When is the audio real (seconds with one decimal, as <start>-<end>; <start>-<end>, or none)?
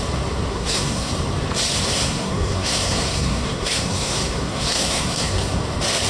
0.0-0.5; 1.1-1.9; 5.6-6.1